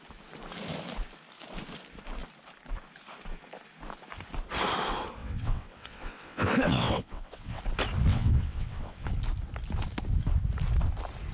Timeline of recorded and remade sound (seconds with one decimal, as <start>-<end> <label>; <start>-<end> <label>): 0.0-5.2 recorded; 5.2-7.6 remade; 7.6-8.1 recorded; 8.1-9.1 remade; 9.1-11.3 recorded